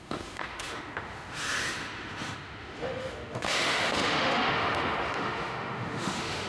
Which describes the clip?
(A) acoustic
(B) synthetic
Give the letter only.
B